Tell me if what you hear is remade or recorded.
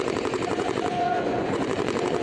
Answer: remade